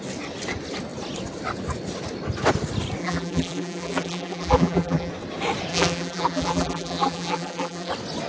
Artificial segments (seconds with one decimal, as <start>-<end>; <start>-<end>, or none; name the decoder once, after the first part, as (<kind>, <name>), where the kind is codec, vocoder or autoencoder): 3.0-5.1 (vocoder, BigVGAN v2); 5.7-7.9